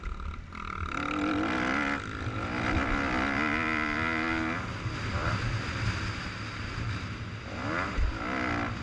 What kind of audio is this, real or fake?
real